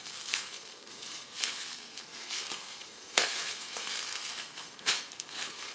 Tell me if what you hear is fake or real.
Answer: fake